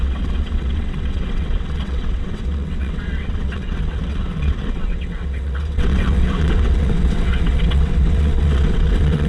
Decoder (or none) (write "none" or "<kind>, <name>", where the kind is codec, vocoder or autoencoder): vocoder, WaveNeXt